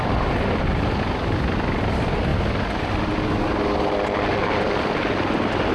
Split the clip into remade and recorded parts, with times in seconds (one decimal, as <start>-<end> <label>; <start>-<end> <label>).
0.0-5.7 recorded